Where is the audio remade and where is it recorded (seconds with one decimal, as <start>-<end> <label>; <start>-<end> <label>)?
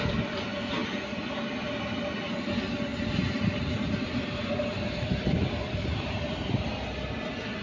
0.0-2.9 recorded; 2.9-6.2 remade; 6.2-7.6 recorded